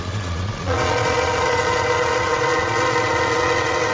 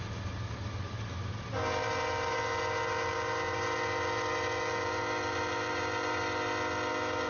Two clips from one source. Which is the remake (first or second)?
first